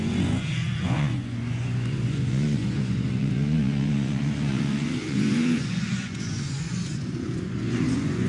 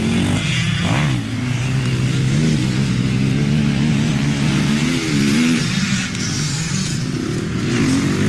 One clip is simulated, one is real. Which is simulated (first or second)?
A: first